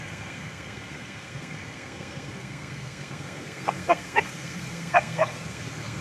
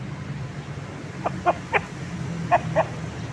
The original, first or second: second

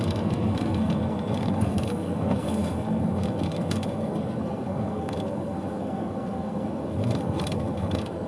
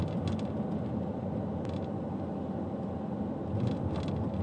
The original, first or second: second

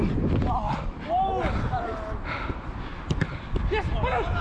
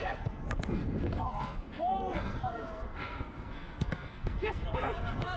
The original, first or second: first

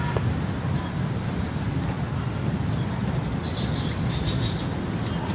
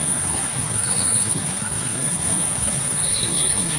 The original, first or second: first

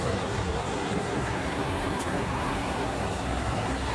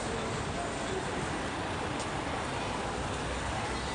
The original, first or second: second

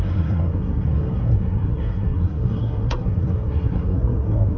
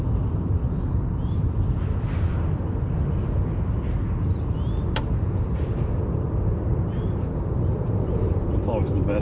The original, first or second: second